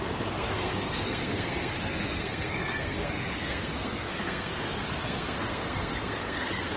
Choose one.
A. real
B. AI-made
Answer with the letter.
B